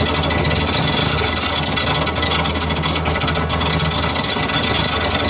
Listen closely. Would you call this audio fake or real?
real